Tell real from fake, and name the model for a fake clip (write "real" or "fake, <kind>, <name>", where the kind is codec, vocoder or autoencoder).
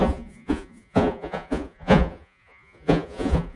fake, vocoder, Vocos